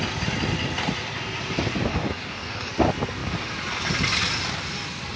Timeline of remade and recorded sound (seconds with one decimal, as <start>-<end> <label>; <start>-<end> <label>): 0.0-1.9 recorded; 1.9-2.7 remade; 2.7-5.2 recorded